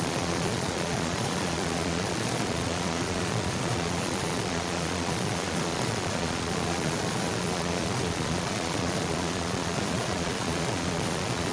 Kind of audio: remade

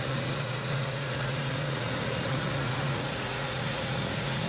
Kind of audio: remade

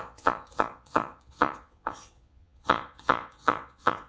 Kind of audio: remade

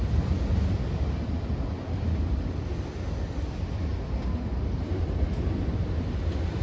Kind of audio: recorded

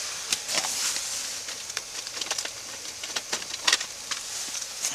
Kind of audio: recorded